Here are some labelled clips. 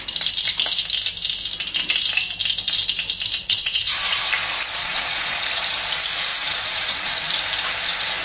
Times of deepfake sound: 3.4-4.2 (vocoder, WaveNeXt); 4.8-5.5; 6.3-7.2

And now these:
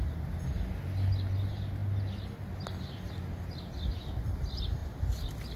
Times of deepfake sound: none